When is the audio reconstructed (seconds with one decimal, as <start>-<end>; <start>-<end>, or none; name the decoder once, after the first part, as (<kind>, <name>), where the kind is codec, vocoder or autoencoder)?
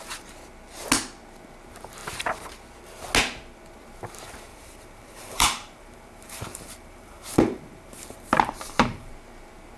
4.5-9.1 (vocoder, BigVGAN v2)